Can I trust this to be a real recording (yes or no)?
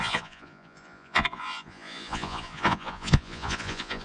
no